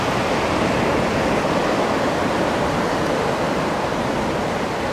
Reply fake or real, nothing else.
real